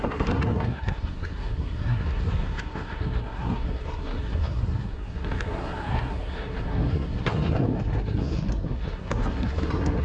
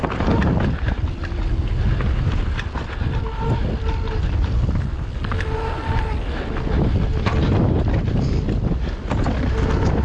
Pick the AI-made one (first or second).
first